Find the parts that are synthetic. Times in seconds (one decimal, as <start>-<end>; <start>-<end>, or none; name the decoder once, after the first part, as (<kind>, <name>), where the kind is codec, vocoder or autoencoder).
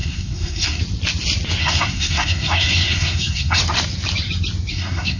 0.0-0.8 (codec, SNAC); 1.6-3.6; 4.7-5.2